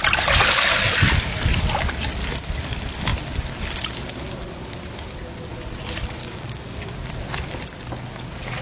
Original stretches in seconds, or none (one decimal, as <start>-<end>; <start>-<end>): 0.0-6.2; 6.8-8.6